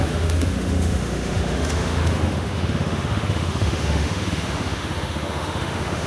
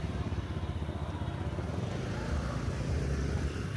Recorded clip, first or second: second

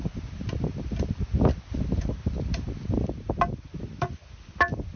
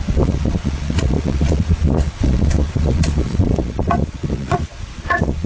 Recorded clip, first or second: first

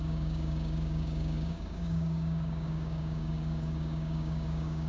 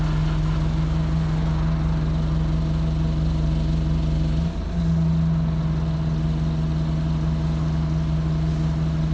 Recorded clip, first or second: second